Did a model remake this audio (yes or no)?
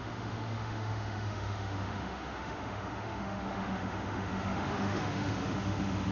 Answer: yes